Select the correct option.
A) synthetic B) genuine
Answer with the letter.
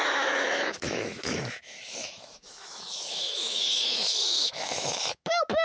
A